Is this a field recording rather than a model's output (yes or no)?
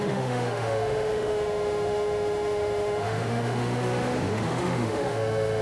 no